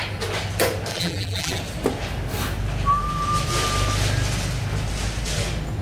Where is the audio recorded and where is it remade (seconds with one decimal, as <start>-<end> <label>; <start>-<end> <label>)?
0.0-0.9 recorded; 0.9-1.6 remade; 1.6-5.8 recorded